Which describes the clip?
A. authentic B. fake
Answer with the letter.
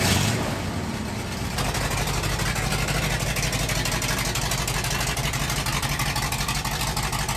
A